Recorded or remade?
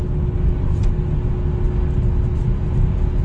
recorded